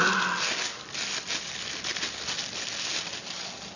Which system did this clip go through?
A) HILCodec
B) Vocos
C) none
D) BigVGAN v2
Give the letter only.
C